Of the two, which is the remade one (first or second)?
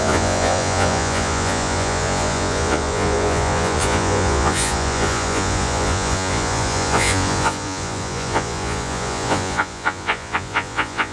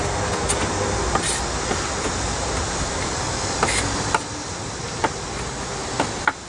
first